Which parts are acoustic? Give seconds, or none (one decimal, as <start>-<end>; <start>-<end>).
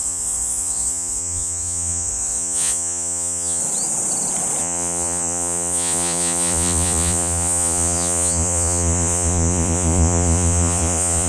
3.6-4.6